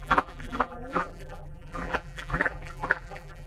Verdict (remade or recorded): remade